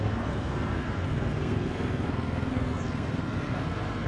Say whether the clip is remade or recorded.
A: remade